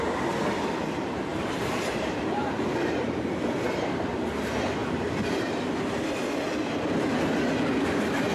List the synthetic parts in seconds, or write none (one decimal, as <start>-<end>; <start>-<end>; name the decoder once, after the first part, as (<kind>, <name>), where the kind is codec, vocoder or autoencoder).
1.3-3.0 (vocoder, BigVGAN v2); 4.8-5.6